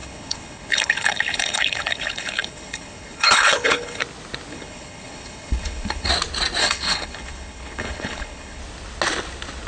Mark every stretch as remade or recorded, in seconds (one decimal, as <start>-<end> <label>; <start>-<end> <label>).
0.0-4.0 remade; 4.0-4.5 recorded; 4.5-6.1 remade; 6.1-6.6 recorded; 6.6-8.6 remade; 8.6-9.7 recorded